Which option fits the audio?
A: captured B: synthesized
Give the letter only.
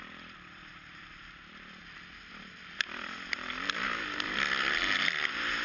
B